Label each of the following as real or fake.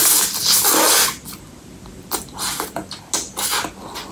real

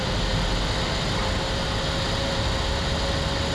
real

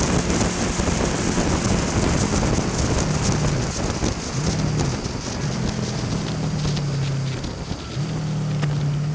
real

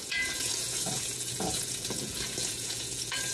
fake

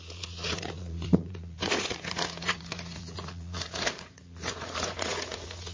fake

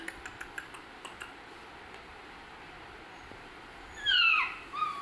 real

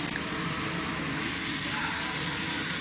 real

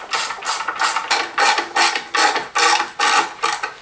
real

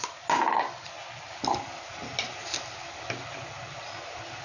real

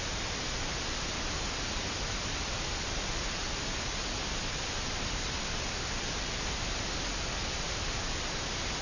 real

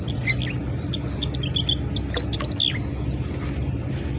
real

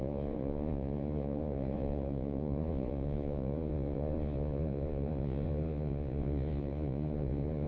fake